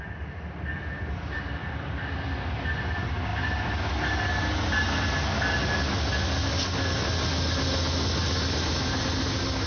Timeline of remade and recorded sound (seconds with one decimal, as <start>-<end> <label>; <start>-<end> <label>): 0.0-9.7 recorded